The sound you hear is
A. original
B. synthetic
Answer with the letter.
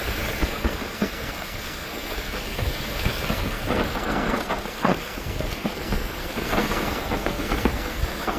B